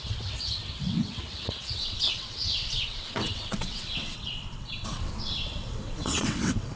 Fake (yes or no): yes